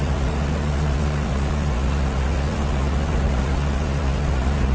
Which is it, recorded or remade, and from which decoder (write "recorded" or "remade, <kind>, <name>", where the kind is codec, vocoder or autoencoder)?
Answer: remade, vocoder, Vocos